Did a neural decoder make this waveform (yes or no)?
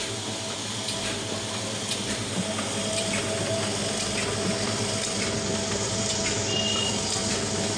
no